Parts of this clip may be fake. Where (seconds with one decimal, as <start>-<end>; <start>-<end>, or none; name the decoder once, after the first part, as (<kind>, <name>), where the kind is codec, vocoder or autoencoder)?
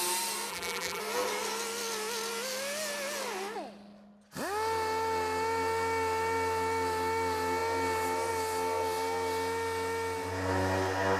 0.5-1.0 (vocoder, BigVGAN v2)